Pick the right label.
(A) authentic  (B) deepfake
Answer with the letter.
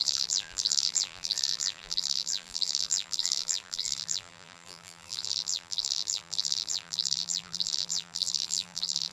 B